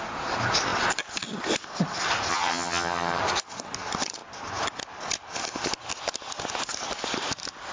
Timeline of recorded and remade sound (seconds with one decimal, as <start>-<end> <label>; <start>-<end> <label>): 0.0-2.3 recorded; 2.3-3.2 remade; 3.2-7.7 recorded